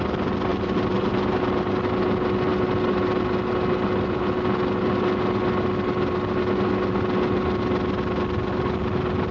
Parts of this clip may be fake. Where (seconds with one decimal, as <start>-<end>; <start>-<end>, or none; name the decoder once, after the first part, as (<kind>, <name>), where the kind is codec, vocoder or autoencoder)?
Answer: 0.5-1.4 (vocoder, BigVGAN v2)